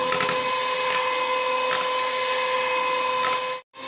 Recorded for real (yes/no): yes